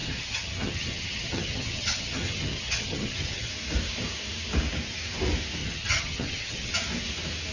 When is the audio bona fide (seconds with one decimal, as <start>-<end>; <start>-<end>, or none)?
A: 3.5-5.6; 6.7-7.5